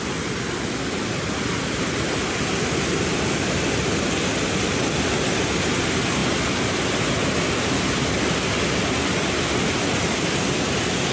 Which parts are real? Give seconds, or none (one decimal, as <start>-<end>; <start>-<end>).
0.0-11.1